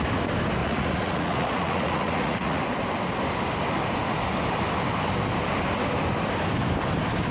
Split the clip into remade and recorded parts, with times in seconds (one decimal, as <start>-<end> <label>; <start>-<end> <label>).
0.0-0.6 recorded; 0.6-2.6 remade; 2.6-7.3 recorded

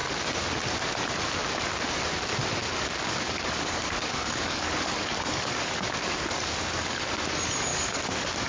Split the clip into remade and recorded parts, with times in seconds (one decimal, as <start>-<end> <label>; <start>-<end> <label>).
0.0-2.6 recorded; 2.6-7.2 remade; 7.2-7.7 recorded; 7.7-8.5 remade

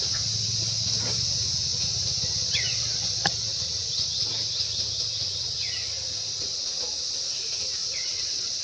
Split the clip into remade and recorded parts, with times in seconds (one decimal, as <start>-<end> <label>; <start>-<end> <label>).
0.0-7.8 recorded; 7.8-8.6 remade

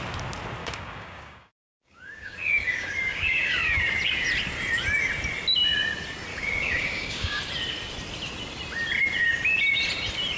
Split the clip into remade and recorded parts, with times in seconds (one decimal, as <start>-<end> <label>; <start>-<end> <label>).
0.0-0.6 recorded; 0.6-3.8 remade; 3.8-6.3 recorded; 6.3-7.4 remade; 7.4-10.4 recorded